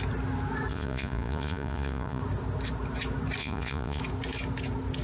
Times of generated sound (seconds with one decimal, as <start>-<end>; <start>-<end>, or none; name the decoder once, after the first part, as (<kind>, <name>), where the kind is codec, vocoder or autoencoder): 0.7-2.2 (vocoder, Vocos); 3.4-4.0